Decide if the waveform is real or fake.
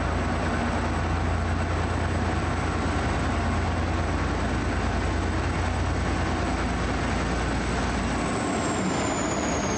real